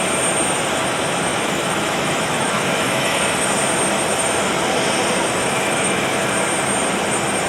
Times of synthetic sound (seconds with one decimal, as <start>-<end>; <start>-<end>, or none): 1.3-3.2; 5.4-6.3